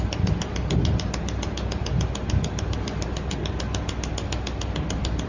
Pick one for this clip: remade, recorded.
recorded